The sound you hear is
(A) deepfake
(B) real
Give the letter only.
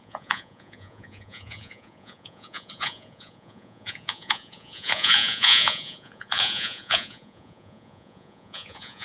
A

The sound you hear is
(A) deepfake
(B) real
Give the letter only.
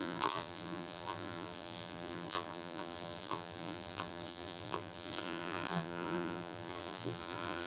A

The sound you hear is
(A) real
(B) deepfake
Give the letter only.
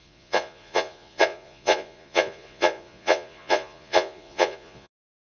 B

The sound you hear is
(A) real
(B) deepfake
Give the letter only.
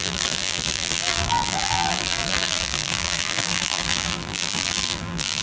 B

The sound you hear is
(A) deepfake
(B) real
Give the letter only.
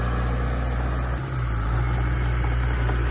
B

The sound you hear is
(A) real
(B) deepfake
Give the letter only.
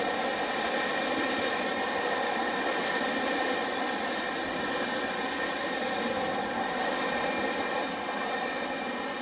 A